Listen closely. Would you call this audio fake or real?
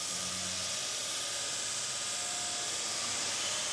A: real